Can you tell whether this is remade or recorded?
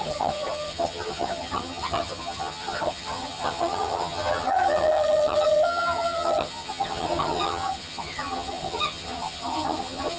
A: remade